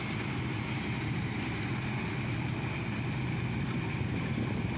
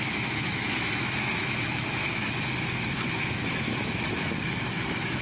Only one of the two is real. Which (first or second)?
first